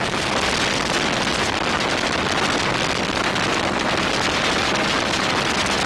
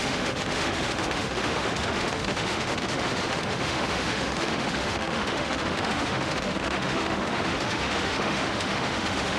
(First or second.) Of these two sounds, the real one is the first